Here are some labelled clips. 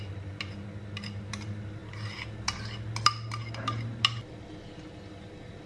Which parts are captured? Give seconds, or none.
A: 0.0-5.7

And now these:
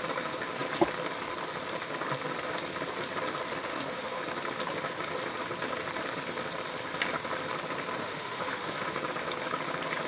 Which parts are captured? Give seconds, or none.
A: 0.0-3.7; 4.2-8.0; 8.9-10.1

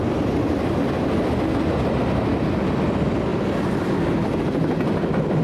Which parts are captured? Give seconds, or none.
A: 0.0-5.4

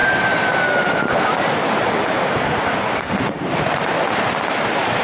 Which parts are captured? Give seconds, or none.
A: 0.0-3.0; 3.8-4.3

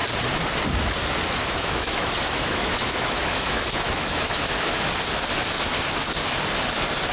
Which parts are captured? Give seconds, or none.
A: 0.0-1.4; 4.9-7.1

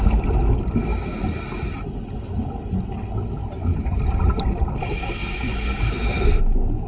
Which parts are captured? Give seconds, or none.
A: 0.0-6.9

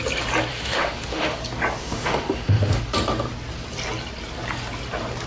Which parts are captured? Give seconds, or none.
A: 0.0-0.5; 1.4-1.8; 2.8-5.3